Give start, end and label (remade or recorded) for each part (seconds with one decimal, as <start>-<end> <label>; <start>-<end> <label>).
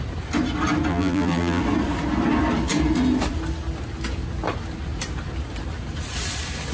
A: 0.0-0.9 recorded; 0.9-1.6 remade; 1.6-6.7 recorded